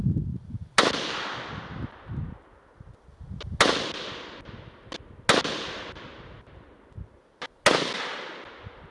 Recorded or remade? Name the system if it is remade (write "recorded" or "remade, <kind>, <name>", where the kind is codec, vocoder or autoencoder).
recorded